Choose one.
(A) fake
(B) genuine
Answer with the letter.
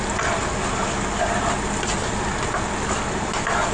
B